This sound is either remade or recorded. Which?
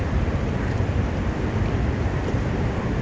remade